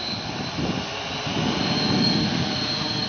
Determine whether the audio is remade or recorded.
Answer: recorded